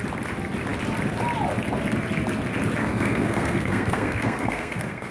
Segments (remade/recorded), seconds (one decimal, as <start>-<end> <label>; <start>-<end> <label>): 0.0-2.8 recorded; 2.8-5.1 remade